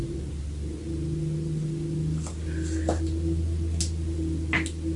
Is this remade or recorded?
recorded